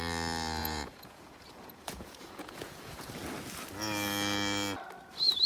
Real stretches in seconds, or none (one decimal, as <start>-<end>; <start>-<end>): 0.0-0.6; 3.1-5.5